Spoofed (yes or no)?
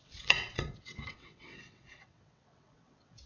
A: yes